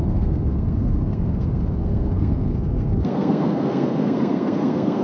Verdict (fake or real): fake